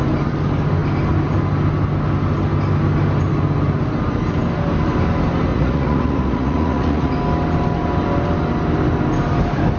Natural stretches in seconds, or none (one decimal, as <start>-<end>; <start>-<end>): 0.0-5.5; 7.1-9.8